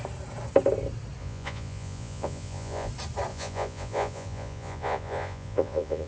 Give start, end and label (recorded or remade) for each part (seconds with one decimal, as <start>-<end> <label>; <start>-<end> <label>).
0.0-1.2 recorded; 1.2-2.9 remade; 2.9-3.3 recorded; 3.3-6.1 remade